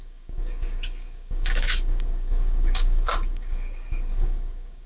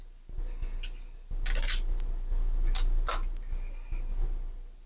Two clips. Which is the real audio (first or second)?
second